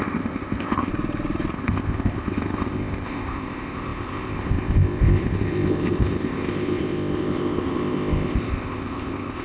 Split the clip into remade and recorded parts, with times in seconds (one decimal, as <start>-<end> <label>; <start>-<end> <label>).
0.0-0.9 remade; 0.9-1.5 recorded; 1.5-9.4 remade